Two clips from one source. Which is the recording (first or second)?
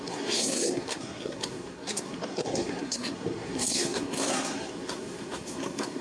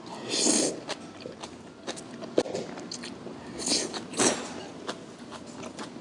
second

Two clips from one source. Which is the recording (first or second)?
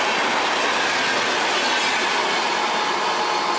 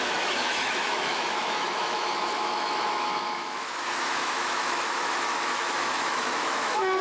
first